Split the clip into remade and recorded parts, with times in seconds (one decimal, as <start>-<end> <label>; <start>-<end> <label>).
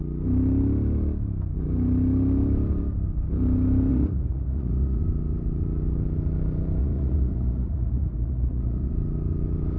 0.0-3.9 recorded; 3.9-5.0 remade; 5.0-6.8 recorded; 6.8-8.9 remade; 8.9-9.8 recorded